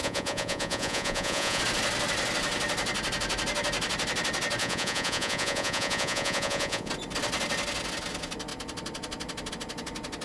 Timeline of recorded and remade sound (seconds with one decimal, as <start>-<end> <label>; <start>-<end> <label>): 0.0-1.6 remade; 1.6-4.6 recorded; 4.6-6.9 remade; 6.9-10.2 recorded